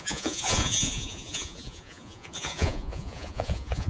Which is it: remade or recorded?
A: remade